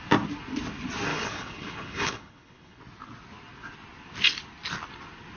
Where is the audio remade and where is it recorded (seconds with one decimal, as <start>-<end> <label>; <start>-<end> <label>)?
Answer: 0.0-1.1 recorded; 1.1-2.8 remade; 2.8-5.4 recorded